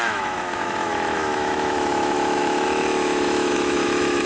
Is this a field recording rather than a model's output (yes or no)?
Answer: no